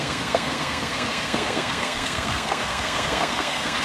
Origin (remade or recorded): remade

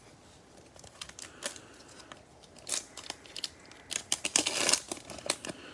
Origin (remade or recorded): recorded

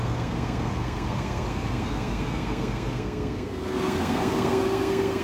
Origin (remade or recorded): remade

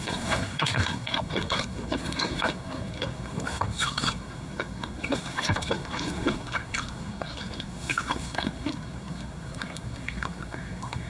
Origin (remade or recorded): remade